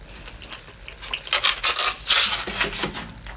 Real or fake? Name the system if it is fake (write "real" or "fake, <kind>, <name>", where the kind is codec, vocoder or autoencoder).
real